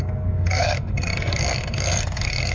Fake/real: fake